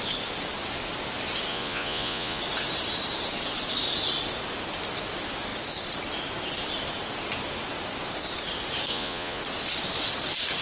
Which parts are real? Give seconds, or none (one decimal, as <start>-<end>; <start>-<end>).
0.0-1.5; 2.4-8.9; 9.4-10.6